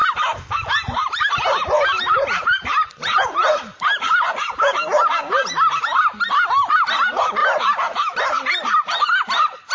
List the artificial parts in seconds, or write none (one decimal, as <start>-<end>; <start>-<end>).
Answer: 2.1-3.2